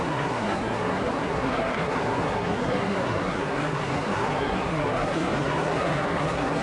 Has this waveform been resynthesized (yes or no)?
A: yes